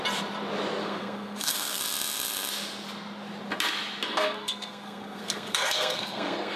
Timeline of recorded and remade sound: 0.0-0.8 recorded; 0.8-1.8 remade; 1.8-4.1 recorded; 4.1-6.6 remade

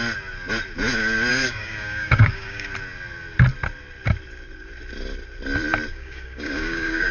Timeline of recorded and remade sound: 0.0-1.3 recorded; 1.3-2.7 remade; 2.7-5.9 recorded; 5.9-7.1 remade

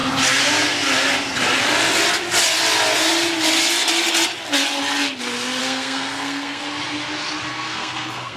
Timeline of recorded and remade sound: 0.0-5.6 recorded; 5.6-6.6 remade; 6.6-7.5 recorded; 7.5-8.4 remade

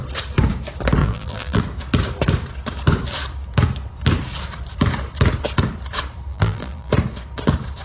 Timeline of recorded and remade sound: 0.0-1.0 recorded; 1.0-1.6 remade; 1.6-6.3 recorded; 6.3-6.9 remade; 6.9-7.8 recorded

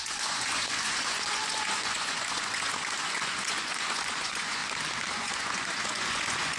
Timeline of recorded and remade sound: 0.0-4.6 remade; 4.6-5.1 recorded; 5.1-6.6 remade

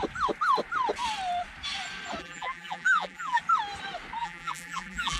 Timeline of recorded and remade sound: 0.0-2.2 recorded; 2.2-3.4 remade; 3.4-4.2 recorded; 4.2-5.2 remade